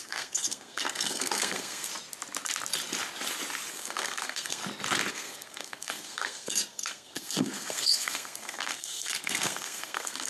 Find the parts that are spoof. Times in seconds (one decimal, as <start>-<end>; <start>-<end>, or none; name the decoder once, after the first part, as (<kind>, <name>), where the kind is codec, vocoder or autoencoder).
0.0-1.9 (codec, SNAC); 3.7-4.6; 5.1-10.3